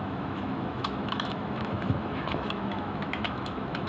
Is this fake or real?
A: fake